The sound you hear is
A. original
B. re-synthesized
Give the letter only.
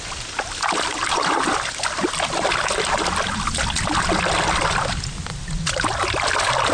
A